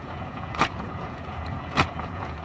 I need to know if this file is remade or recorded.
remade